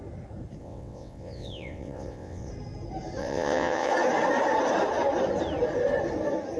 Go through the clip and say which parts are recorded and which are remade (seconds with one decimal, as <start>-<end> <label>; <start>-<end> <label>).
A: 0.0-0.6 recorded; 0.6-2.5 remade; 2.5-3.2 recorded; 3.2-3.9 remade; 3.9-6.6 recorded